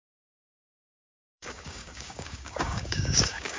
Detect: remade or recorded remade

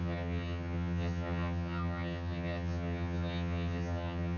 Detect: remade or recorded remade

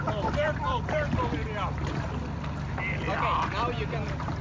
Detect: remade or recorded recorded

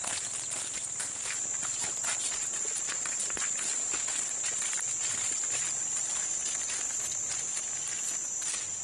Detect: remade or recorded recorded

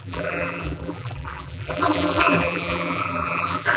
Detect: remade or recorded remade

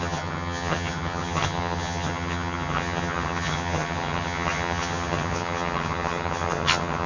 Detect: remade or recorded remade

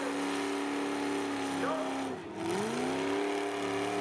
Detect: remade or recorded recorded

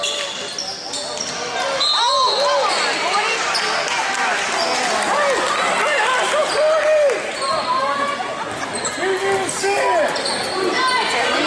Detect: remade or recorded recorded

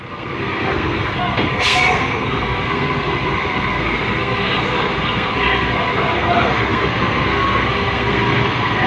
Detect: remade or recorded remade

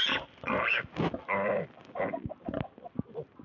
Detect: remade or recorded remade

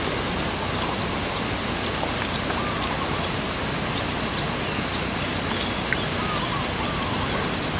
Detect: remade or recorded recorded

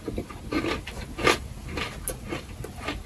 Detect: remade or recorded recorded